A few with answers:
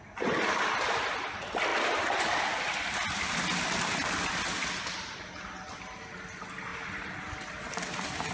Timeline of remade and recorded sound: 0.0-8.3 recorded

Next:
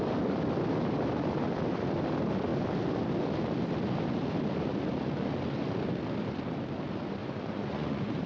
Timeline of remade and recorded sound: 0.0-7.2 recorded; 7.2-8.3 remade

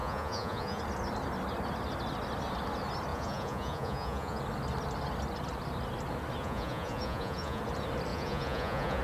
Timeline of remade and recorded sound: 0.0-0.8 remade; 0.8-3.1 recorded; 3.1-4.4 remade; 4.4-6.4 recorded; 6.4-7.6 remade; 7.6-8.1 recorded; 8.1-9.0 remade

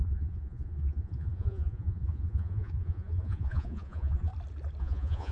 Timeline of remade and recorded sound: 0.0-4.3 remade; 4.3-4.8 recorded; 4.8-5.3 remade

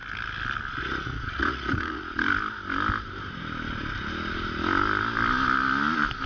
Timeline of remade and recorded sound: 0.0-0.8 recorded; 0.8-2.1 remade; 2.1-6.3 recorded